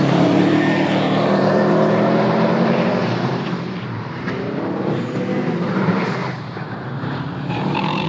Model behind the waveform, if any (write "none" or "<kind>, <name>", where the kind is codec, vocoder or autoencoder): vocoder, BigVGAN v2